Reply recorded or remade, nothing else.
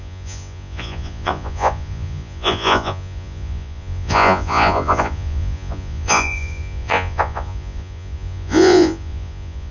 remade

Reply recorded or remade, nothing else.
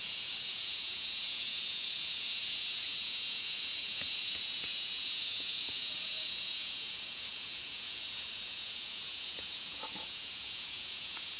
remade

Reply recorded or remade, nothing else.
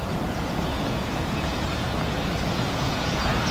remade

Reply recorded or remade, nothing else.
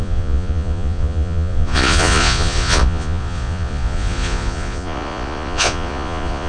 remade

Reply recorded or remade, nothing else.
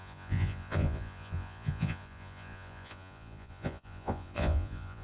remade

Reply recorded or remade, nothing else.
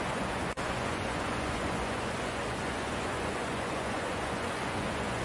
remade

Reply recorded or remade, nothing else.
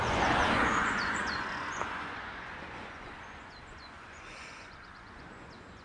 remade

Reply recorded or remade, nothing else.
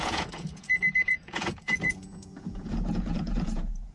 remade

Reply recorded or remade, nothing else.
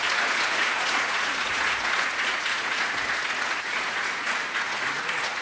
remade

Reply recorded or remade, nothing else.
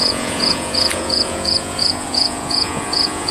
remade